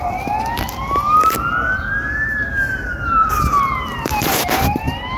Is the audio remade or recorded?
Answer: remade